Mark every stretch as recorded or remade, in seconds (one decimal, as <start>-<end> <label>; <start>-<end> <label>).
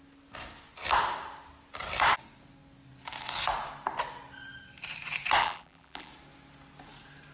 0.0-5.4 recorded; 5.4-6.1 remade; 6.1-7.3 recorded